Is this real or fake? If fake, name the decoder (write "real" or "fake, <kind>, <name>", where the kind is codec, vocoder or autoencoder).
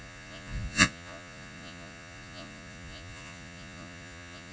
fake, vocoder, Vocos